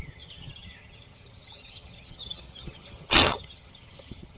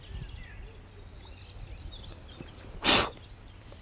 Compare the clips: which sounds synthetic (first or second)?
first